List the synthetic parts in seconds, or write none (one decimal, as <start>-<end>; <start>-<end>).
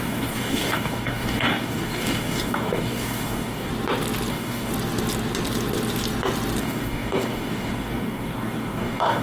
0.0-3.7; 4.3-4.7; 6.6-9.2